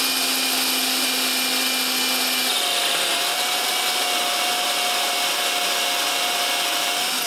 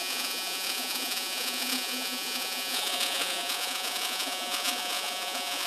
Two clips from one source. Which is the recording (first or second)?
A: first